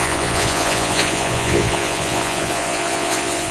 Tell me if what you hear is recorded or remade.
remade